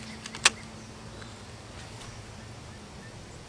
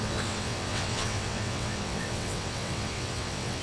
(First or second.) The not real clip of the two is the second